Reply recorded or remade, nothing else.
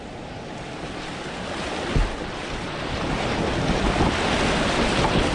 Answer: recorded